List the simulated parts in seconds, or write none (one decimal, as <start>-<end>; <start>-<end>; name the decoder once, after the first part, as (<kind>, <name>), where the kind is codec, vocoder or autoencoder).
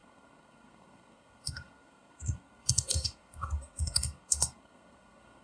0.0-5.4 (codec, SNAC)